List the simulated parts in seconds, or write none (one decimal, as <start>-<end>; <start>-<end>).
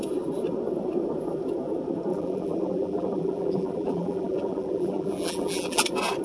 2.1-5.8